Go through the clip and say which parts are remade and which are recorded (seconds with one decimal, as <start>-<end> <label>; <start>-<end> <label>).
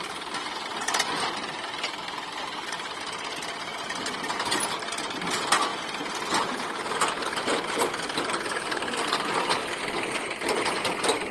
0.0-11.3 recorded